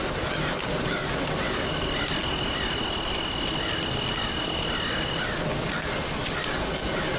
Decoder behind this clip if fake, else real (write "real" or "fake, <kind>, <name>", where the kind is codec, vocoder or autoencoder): real